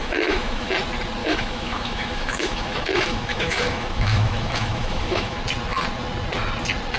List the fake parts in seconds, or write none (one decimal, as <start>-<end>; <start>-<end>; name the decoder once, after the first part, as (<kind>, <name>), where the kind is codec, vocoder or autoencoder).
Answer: 0.0-0.7 (autoencoder, DAC-VAE); 1.2-5.4